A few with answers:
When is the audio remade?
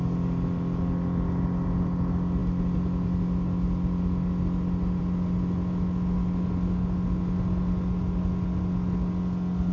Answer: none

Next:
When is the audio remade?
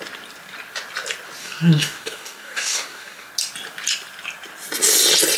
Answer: 1.4-3.3 (codec, DAC)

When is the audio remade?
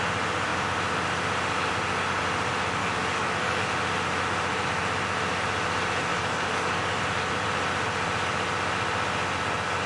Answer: 2.8-3.7 (codec, DAC); 6.1-7.0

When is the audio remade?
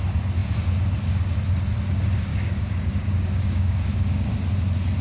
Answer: 2.3-4.3 (codec, DAC)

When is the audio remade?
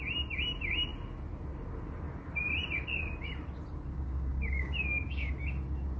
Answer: 3.9-5.3 (codec, DAC)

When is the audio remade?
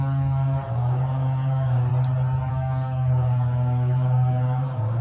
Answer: 0.0-1.9 (codec, DAC); 2.5-5.0